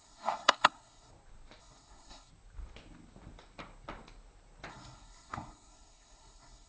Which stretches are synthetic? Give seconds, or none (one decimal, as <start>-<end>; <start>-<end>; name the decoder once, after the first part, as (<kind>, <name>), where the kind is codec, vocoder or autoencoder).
0.0-1.1 (codec, SNAC); 1.6-2.3; 4.7-6.7